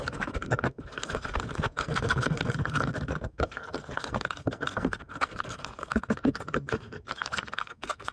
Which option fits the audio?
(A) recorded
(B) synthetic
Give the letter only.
B